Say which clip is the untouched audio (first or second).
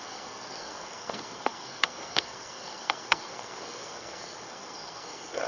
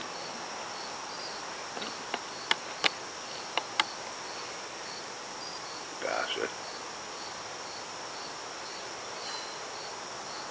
second